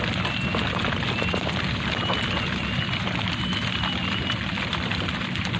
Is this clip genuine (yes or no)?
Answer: yes